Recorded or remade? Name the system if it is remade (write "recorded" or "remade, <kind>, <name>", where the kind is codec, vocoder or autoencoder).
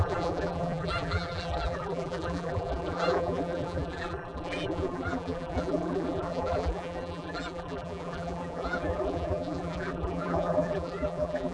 remade, vocoder, BigVGAN v2